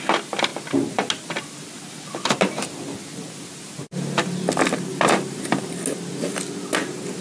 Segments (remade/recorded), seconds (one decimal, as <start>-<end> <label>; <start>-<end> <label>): 0.0-4.9 recorded; 4.9-5.8 remade; 5.8-7.2 recorded